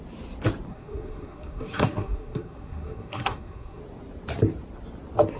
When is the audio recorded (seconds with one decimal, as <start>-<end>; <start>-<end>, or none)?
0.0-0.7; 3.8-5.4